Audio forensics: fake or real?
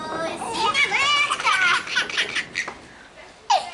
real